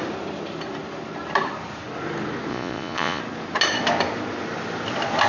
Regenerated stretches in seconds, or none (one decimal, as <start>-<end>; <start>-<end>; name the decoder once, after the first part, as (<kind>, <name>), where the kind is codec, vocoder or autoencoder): 2.5-3.2 (vocoder, Vocos)